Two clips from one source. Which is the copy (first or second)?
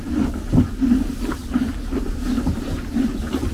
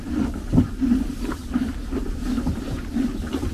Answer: second